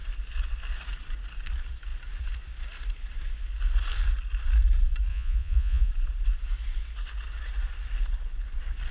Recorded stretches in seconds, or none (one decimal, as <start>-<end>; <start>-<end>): 0.0-5.1; 5.9-8.9